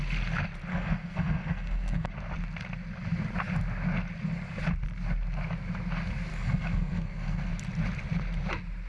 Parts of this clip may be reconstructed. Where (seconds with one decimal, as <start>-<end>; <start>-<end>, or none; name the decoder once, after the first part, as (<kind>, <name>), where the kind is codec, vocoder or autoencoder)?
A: 0.7-2.1 (codec, SNAC); 6.3-7.5